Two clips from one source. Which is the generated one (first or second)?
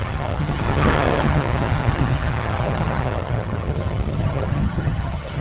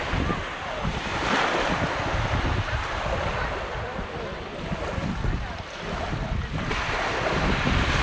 first